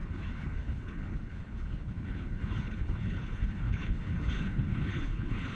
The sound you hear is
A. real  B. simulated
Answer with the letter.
B